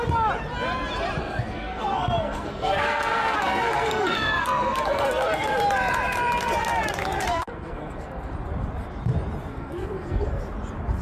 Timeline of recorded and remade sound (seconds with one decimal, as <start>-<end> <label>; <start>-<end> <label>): 0.0-1.2 recorded; 1.2-5.6 remade; 5.6-7.3 recorded; 7.3-8.3 remade; 8.3-9.5 recorded; 9.5-10.4 remade; 10.4-11.0 recorded